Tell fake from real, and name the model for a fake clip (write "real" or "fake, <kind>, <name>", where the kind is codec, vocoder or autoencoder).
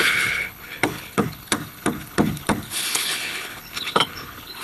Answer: fake, codec, HILCodec